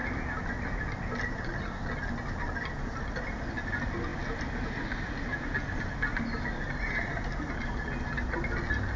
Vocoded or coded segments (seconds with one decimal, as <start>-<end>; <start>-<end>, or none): none